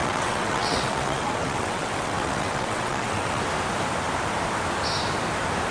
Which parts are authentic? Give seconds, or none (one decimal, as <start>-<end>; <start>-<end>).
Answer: 3.4-5.7